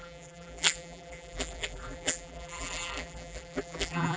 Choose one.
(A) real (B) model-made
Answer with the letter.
B